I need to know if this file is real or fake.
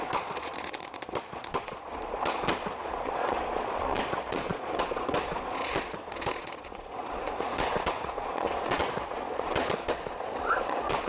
fake